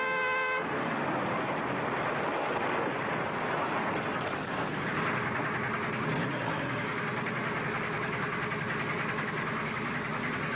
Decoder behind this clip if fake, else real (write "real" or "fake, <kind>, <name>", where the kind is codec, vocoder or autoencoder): real